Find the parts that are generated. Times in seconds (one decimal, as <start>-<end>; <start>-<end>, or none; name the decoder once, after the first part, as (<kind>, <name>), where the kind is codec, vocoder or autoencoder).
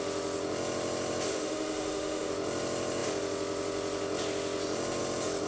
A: 1.3-2.3 (autoencoder, DAC-VAE)